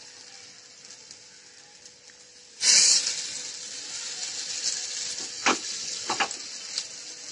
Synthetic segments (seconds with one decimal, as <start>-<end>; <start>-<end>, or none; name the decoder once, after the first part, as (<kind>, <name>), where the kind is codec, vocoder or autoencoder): 5.4-6.2 (codec, HILCodec)